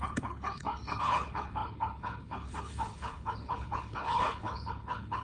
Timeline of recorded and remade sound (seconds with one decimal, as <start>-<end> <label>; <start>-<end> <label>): 0.0-5.2 remade